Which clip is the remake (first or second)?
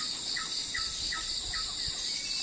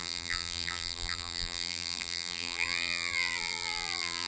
second